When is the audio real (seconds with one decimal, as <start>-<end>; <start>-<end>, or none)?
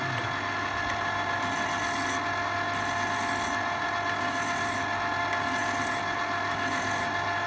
0.0-7.5